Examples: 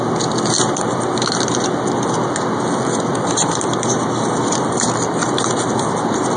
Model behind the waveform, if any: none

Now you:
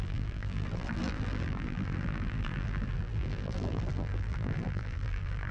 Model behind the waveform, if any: vocoder, BigVGAN v2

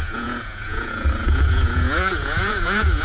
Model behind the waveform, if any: vocoder, Vocos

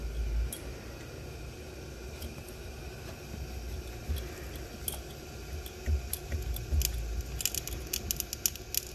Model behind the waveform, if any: none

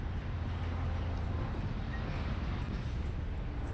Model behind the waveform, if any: none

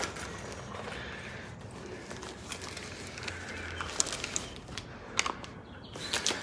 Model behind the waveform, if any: none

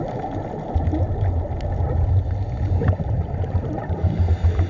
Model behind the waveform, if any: none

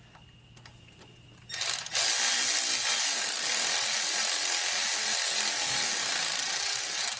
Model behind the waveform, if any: none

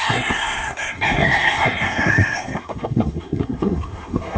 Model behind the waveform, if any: codec, SNAC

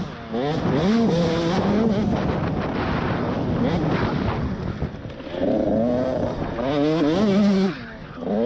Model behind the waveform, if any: none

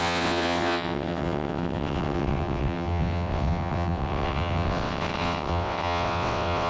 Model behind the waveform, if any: vocoder, WaveNeXt